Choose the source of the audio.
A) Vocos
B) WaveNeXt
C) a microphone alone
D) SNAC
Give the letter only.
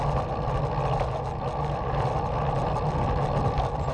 C